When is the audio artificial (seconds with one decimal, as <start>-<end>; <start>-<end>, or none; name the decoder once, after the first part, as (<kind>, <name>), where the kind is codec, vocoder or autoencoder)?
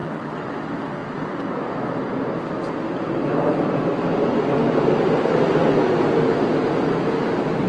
0.0-0.5 (vocoder, WaveNeXt)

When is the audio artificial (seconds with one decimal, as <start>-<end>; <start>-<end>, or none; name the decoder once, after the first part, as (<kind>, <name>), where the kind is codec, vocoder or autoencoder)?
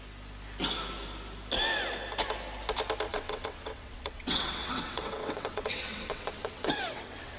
3.1-7.4 (vocoder, WaveNeXt)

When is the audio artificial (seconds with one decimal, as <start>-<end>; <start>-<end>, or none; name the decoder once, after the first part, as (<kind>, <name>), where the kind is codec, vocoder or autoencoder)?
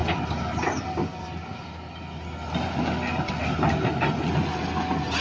none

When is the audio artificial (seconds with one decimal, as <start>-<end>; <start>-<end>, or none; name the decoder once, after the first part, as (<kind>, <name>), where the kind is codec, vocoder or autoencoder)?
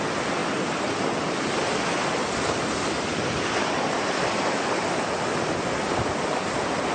none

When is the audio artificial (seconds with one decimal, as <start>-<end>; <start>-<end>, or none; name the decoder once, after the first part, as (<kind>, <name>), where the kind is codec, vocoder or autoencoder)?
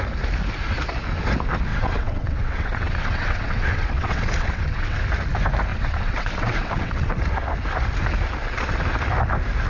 1.7-5.0 (vocoder, WaveNeXt); 5.7-7.2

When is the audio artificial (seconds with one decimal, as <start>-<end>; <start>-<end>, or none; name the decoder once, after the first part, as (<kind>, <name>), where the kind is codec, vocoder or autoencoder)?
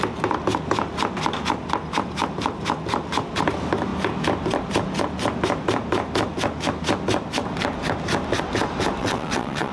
9.0-9.7 (vocoder, WaveNeXt)